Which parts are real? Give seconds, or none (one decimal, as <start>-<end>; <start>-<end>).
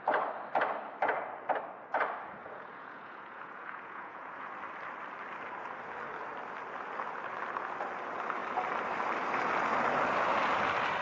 0.0-2.4; 4.5-11.0